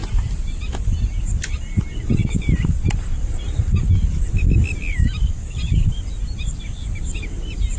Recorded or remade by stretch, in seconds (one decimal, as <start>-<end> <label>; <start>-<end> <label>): 0.0-2.2 recorded; 2.2-3.8 remade; 3.8-5.0 recorded; 5.0-6.6 remade; 6.6-7.8 recorded

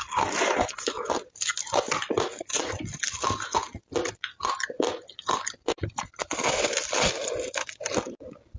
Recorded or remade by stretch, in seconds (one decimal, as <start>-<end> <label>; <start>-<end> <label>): 0.0-8.6 recorded

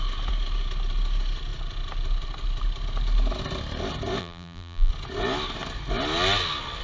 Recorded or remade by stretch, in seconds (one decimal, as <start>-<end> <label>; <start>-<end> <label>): 0.0-4.2 recorded; 4.2-4.9 remade; 4.9-6.8 recorded

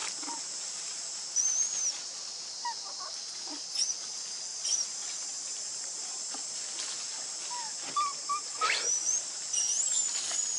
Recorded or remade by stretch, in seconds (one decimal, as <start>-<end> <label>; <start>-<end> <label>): 0.0-4.5 recorded; 4.5-6.2 remade; 6.2-10.6 recorded